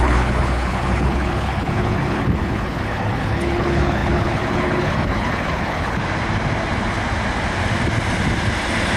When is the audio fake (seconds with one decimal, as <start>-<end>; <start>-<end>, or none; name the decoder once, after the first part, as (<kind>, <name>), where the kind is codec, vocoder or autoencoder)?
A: 0.0-6.0 (codec, HILCodec)